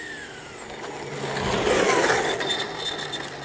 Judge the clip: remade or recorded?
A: recorded